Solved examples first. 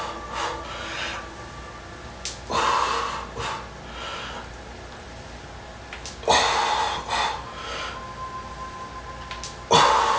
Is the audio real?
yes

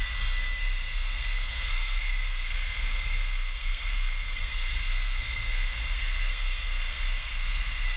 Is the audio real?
no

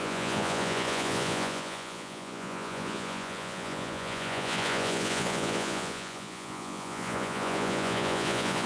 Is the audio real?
no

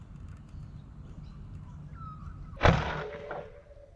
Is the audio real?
yes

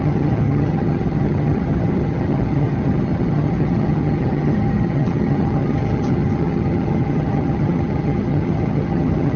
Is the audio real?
no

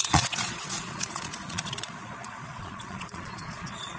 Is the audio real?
no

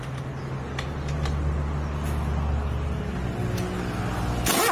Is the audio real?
yes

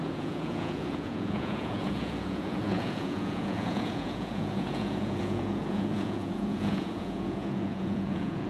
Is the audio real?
no